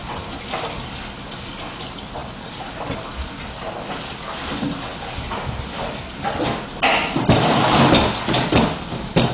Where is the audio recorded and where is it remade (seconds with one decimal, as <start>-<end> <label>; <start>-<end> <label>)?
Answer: 0.0-9.3 recorded